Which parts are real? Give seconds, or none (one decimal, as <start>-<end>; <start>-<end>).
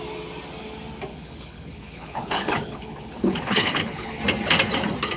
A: 0.0-1.1; 4.2-5.2